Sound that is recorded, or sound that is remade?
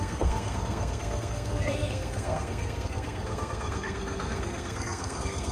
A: remade